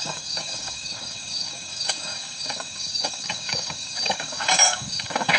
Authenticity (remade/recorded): remade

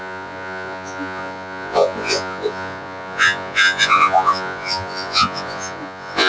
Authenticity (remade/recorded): remade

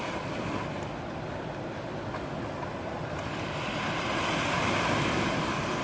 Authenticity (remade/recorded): recorded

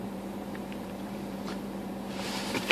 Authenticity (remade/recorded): remade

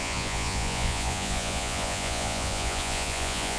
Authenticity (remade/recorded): remade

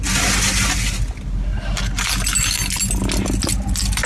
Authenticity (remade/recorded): recorded